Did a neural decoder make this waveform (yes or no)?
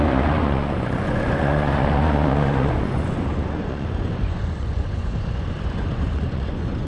yes